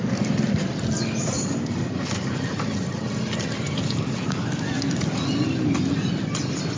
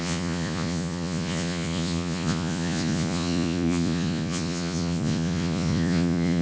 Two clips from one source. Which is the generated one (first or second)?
second